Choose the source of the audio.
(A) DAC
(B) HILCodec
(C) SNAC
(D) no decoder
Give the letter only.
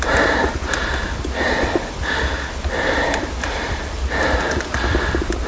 D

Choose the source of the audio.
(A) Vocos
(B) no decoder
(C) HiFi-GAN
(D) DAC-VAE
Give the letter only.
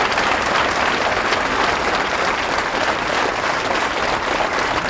B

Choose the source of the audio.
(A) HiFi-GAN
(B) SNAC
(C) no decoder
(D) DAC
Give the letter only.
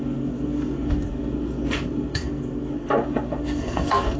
B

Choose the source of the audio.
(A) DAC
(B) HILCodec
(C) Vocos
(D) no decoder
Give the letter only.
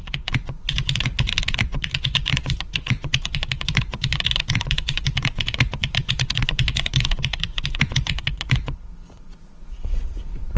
C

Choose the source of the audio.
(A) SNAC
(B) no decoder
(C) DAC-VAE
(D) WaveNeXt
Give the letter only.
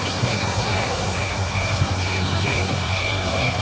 A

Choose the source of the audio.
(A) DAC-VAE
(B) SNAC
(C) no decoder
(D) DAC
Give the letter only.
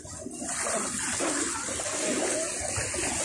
C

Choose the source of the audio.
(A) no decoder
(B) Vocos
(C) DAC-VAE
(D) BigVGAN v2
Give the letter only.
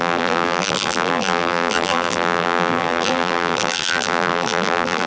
D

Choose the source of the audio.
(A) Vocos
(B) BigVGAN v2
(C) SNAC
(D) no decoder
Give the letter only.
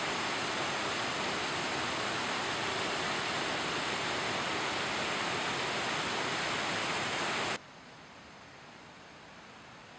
D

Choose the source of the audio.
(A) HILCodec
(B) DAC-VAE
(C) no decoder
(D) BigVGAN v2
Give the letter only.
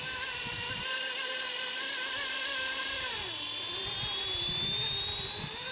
C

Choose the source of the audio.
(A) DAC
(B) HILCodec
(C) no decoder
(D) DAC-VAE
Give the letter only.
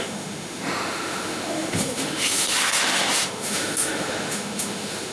D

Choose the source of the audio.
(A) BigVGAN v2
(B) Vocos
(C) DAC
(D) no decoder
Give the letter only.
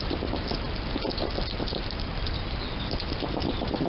D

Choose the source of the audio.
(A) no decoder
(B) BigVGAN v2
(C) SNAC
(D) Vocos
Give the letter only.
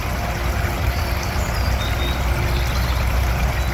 A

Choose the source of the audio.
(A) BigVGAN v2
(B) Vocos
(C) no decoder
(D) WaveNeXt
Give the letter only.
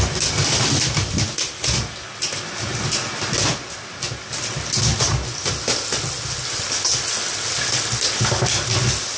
C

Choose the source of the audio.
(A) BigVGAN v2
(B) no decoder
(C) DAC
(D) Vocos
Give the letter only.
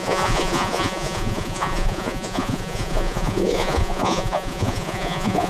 D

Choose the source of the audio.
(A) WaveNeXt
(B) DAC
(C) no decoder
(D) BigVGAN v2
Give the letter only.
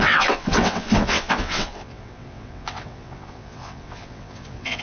A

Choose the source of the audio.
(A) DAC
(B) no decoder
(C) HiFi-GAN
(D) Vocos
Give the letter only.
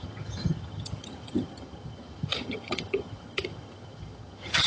C